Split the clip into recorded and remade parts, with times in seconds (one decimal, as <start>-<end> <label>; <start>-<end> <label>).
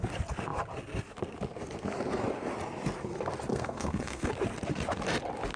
0.0-3.5 recorded; 3.5-4.3 remade; 4.3-5.6 recorded